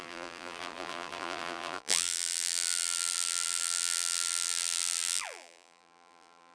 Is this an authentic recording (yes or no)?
no